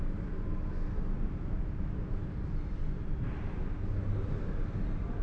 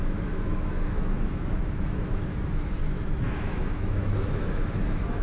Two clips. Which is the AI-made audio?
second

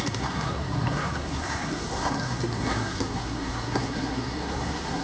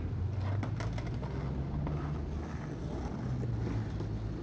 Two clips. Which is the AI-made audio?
first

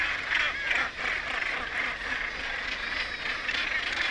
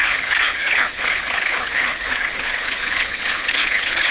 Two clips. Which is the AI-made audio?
second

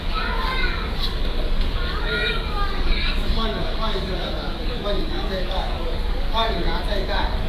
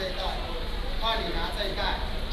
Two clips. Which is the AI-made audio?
first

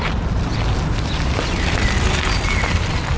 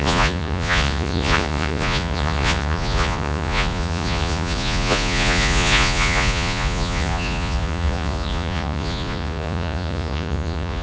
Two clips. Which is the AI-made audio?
second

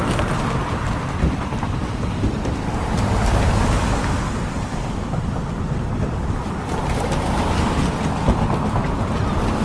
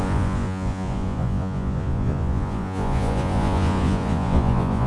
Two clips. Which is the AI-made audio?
second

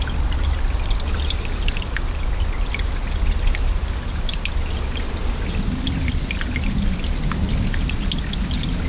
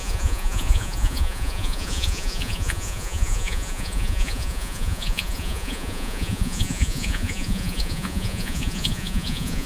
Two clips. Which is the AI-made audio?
second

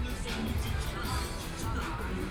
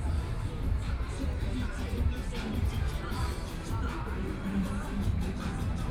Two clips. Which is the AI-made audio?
second